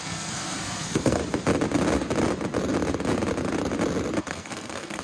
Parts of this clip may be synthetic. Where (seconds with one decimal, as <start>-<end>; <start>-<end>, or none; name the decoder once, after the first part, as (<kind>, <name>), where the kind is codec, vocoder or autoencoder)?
0.0-1.2 (codec, SNAC); 4.2-5.0